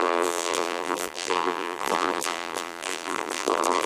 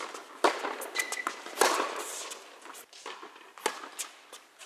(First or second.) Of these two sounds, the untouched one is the second